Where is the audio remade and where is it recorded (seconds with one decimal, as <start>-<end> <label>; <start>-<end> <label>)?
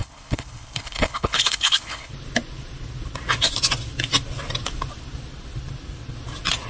0.0-2.1 remade; 2.1-6.7 recorded